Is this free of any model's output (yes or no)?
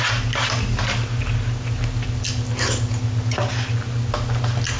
yes